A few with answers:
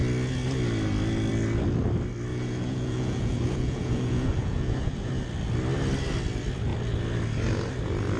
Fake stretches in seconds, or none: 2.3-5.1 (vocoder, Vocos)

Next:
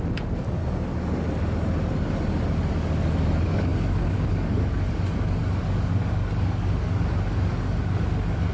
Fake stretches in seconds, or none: 0.0-0.6 (codec, DAC); 2.7-8.5

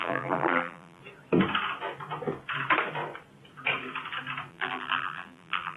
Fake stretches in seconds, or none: 0.0-1.0 (vocoder, BigVGAN v2); 4.5-5.8

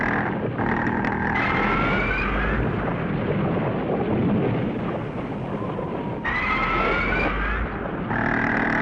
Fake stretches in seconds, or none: none

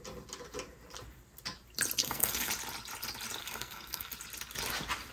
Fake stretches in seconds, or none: 2.0-2.5 (codec, SNAC); 3.4-4.1

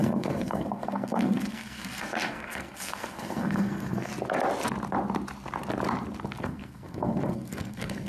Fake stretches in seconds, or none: 0.0-4.1 (codec, SNAC); 6.4-8.1

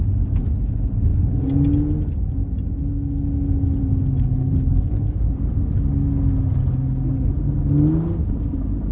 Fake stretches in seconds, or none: none